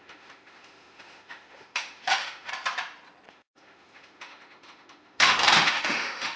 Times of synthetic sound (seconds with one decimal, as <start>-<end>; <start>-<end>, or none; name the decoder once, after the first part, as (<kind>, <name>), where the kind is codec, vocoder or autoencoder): 0.0-2.5 (autoencoder, DAC-VAE); 3.3-6.4